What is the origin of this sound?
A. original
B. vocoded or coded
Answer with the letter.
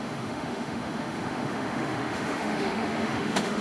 B